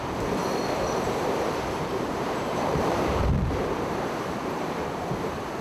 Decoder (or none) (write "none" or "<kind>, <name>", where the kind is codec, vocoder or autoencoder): vocoder, BigVGAN v2